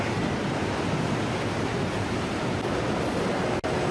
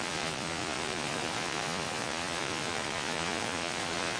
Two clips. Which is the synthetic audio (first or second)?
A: second